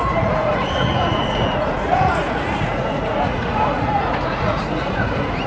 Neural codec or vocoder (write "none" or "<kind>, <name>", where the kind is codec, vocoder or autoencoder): vocoder, Vocos